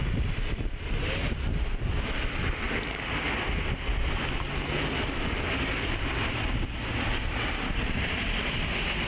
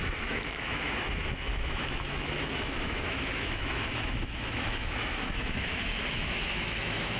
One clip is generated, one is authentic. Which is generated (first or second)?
second